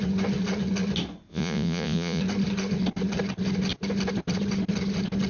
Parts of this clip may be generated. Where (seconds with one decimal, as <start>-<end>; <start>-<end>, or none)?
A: 1.3-2.2